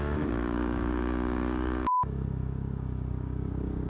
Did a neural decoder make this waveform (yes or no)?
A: yes